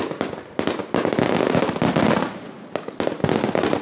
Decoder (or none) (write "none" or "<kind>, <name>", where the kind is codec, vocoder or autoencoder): none